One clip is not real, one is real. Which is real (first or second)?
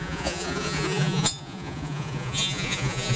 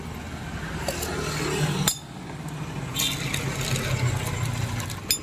second